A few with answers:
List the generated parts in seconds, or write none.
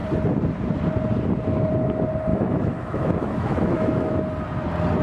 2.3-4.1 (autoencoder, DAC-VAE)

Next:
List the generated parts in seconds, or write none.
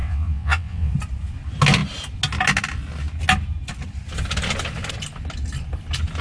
0.0-0.9 (vocoder, WaveNeXt)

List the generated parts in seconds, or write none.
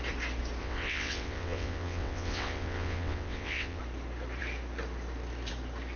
0.6-3.8 (vocoder, WaveNeXt)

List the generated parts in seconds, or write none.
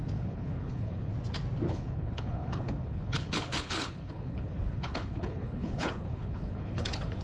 0.0-1.1 (codec, HILCodec); 1.7-7.2